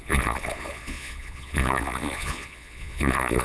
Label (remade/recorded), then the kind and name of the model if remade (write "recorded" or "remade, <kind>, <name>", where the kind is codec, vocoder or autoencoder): remade, vocoder, Vocos